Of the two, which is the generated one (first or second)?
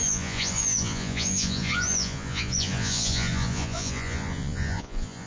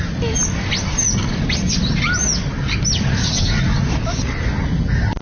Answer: first